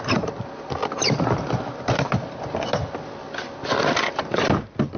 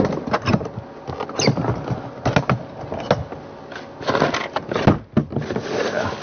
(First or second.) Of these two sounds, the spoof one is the first